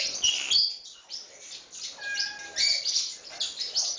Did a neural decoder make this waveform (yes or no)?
no